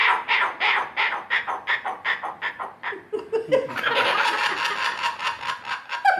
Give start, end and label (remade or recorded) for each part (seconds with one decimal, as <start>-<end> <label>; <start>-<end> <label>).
0.0-6.2 recorded